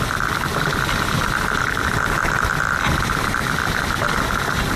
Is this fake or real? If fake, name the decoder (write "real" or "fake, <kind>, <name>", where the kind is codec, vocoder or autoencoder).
real